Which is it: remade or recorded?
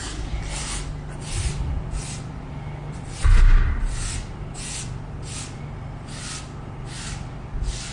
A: recorded